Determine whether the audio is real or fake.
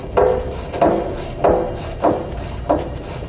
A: real